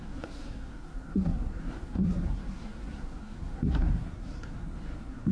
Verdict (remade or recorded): remade